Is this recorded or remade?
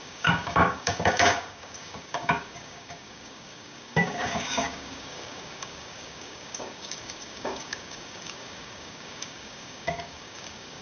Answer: remade